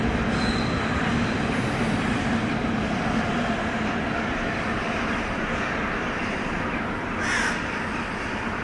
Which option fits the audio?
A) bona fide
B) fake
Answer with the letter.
A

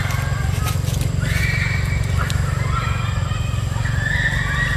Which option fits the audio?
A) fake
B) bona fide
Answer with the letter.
B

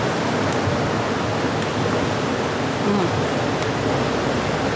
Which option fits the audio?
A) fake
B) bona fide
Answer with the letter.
B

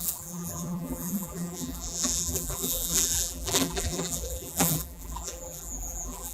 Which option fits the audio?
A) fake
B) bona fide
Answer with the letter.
A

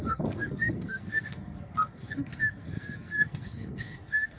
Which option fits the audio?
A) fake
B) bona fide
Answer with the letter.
A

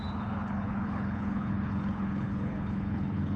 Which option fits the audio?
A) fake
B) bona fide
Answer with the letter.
A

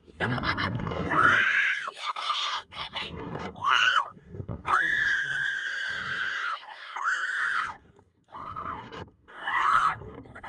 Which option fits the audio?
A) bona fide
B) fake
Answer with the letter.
B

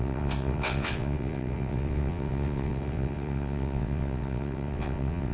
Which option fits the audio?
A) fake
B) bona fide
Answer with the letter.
A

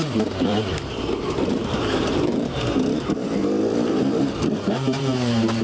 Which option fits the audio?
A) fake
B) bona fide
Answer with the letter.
A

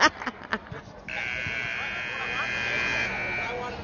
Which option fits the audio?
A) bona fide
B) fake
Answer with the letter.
A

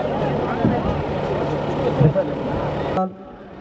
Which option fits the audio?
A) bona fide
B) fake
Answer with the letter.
A